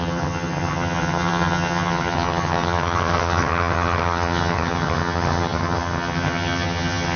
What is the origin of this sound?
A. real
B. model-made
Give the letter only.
B